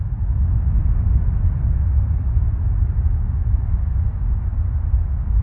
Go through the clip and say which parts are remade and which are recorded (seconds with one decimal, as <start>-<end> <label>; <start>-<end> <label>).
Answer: 0.0-5.4 recorded